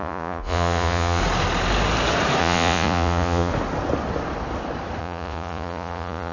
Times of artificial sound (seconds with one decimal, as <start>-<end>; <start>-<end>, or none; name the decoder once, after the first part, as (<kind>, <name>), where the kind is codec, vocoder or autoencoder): 0.0-1.2 (vocoder, Vocos); 2.4-3.5; 5.0-6.3